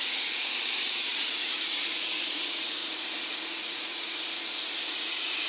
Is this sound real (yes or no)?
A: no